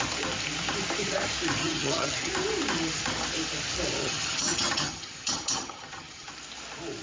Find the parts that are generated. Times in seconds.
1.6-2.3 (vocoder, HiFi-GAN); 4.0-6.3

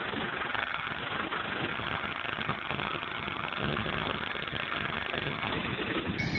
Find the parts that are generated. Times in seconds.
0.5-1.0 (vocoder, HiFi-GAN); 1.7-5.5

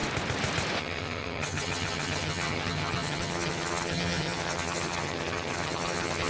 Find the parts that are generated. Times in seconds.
0.8-6.3 (vocoder, HiFi-GAN)

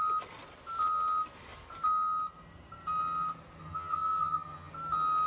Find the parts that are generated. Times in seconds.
3.6-4.7 (vocoder, HiFi-GAN)